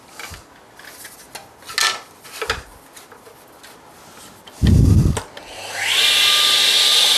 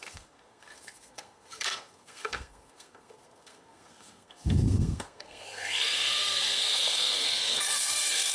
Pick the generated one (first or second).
second